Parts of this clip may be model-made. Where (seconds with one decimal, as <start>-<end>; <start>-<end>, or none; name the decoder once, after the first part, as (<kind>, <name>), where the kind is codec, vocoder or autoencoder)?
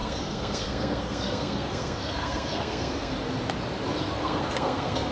0.0-3.1 (codec, SNAC); 4.2-5.1